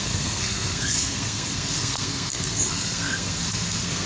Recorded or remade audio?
remade